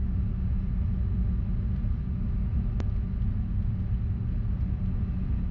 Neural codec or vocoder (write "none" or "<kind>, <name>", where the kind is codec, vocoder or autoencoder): none